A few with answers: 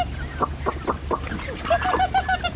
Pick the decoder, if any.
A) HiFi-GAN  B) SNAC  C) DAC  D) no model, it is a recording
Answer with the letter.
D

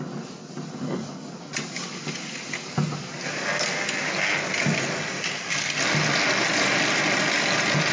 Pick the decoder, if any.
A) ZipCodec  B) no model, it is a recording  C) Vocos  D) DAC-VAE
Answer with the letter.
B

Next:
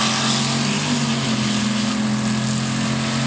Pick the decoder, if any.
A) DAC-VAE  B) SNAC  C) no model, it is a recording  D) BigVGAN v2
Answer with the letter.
C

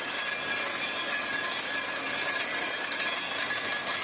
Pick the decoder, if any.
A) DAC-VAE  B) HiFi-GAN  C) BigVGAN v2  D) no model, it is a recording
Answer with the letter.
D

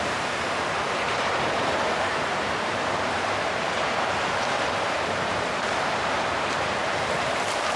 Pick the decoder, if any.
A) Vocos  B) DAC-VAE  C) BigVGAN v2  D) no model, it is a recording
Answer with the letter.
C